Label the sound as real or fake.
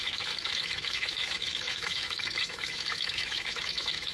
fake